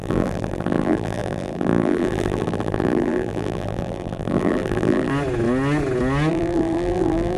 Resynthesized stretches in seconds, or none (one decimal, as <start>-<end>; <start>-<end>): 0.0-5.1; 6.3-7.4